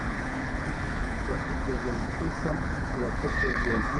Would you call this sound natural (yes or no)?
no